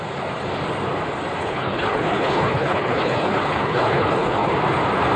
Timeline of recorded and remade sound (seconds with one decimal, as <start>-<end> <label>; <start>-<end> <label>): 0.0-1.4 recorded; 1.4-4.5 remade; 4.5-5.2 recorded